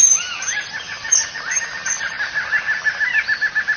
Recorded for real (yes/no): yes